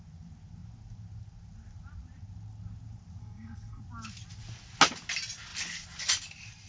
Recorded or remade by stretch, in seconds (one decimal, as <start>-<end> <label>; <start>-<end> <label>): 0.0-3.2 recorded; 3.2-3.8 remade; 3.8-6.7 recorded